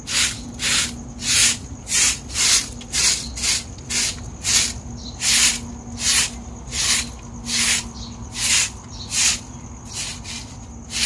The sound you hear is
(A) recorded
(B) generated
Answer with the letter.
A